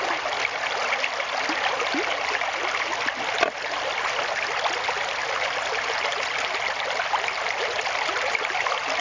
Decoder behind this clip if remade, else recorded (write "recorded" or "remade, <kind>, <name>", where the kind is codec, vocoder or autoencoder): recorded